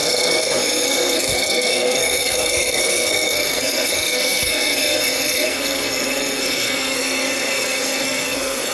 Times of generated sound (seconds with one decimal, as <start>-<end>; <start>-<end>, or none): 0.0-8.7